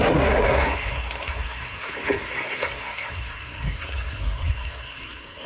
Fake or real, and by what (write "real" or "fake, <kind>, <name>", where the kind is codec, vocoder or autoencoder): fake, codec, SNAC